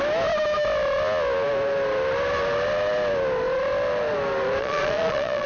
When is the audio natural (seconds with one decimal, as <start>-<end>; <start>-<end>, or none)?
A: 0.0-4.6

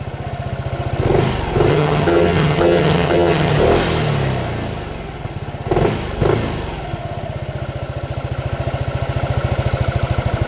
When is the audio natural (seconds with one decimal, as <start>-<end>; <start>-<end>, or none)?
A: 0.0-1.7; 3.5-10.5

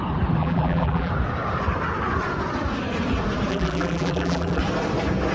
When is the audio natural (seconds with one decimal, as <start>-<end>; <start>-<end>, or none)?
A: 0.0-0.4; 1.1-3.5; 4.6-5.3

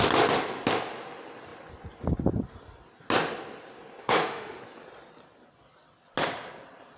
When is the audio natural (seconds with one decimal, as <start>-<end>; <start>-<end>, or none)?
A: 0.0-4.0; 4.6-7.0